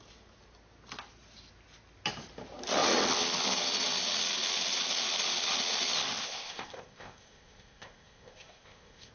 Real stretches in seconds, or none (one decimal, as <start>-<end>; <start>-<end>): 0.0-6.2